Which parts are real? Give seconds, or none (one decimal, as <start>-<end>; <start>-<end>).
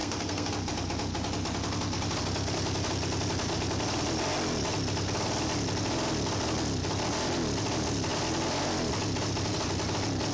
0.5-10.3